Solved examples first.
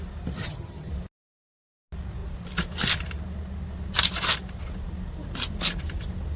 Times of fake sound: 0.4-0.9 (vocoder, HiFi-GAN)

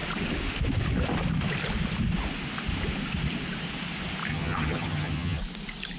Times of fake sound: 4.3-5.4 (vocoder, HiFi-GAN)

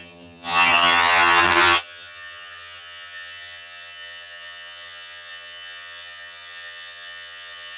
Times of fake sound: 0.0-7.8 (vocoder, HiFi-GAN)

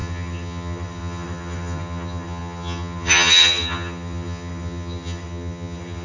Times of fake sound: 0.0-6.0 (vocoder, HiFi-GAN)

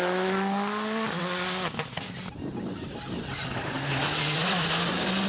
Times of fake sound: none